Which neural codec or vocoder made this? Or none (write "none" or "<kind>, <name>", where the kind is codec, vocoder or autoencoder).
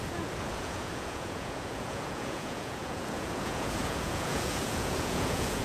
vocoder, Vocos